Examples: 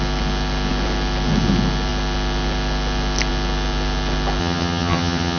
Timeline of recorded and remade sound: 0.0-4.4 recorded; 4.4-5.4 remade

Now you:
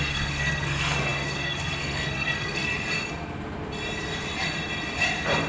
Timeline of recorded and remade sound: 0.0-2.7 remade; 2.7-5.5 recorded

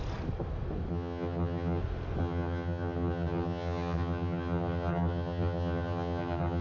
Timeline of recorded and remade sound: 0.0-0.9 recorded; 0.9-1.8 remade; 1.8-2.2 recorded; 2.2-6.6 remade